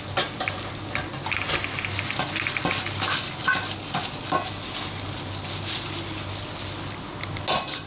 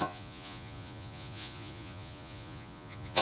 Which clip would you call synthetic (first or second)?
second